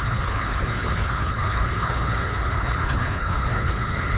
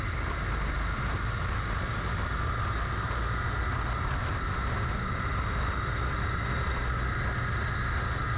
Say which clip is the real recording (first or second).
second